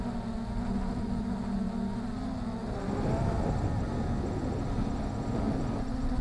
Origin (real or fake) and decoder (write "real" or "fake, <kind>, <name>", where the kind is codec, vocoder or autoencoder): real